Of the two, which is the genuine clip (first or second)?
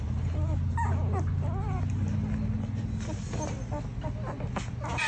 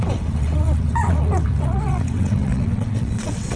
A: first